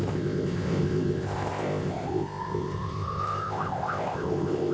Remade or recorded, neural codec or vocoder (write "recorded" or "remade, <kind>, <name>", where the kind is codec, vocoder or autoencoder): remade, codec, ZipCodec